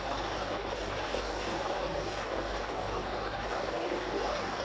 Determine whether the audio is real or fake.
fake